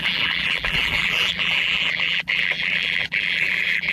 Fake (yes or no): yes